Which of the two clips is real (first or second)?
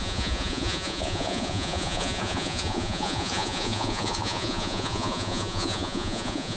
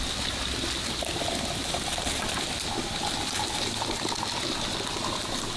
second